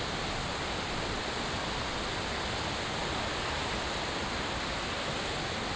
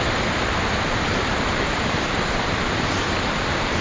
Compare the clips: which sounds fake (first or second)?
second